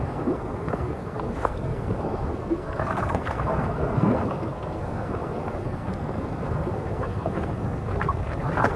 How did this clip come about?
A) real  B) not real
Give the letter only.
B